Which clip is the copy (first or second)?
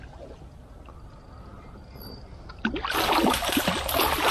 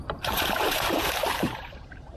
second